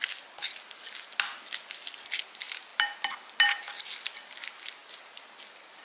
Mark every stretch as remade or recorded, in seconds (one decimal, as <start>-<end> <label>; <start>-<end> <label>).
0.0-5.8 recorded